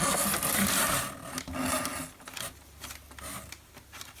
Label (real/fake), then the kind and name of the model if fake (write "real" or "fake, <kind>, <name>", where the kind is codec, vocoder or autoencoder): real